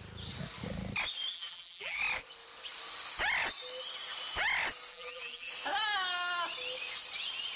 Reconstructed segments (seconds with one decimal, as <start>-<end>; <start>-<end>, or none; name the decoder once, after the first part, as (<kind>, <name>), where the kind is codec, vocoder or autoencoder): 1.3-2.0 (vocoder, BigVGAN v2); 4.9-5.5